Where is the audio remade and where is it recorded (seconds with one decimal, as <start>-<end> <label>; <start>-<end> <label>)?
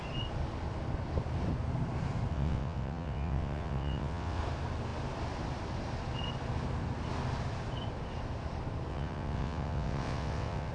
0.0-2.3 recorded; 2.3-4.4 remade; 4.4-8.9 recorded; 8.9-10.7 remade